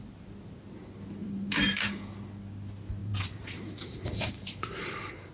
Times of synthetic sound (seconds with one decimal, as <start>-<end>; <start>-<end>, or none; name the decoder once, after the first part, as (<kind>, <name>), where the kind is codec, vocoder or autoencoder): 1.2-1.9 (vocoder, BigVGAN v2); 3.0-5.3